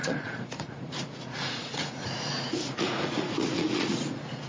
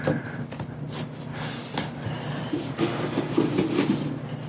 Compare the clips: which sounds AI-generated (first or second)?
first